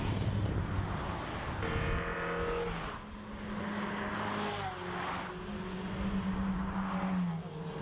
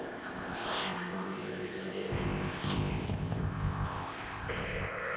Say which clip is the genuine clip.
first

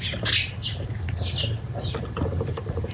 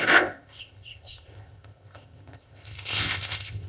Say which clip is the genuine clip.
first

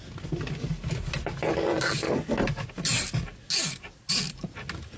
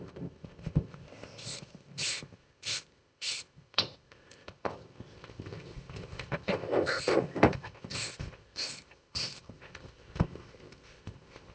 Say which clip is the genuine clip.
first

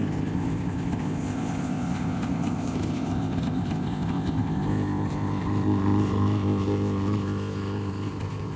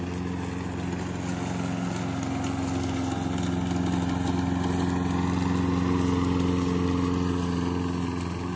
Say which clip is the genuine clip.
second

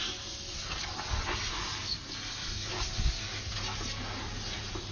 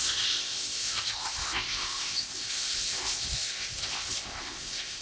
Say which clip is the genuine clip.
first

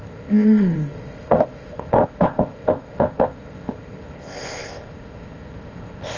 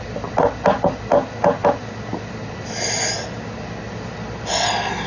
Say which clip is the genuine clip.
second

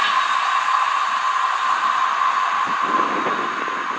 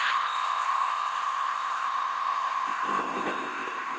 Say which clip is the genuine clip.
first